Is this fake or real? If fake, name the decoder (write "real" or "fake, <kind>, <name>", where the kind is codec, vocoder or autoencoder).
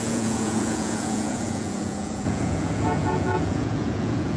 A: fake, vocoder, Vocos